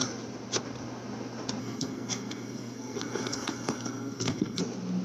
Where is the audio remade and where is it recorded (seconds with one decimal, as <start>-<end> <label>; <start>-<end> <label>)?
0.0-1.6 recorded; 1.6-4.6 remade; 4.6-5.0 recorded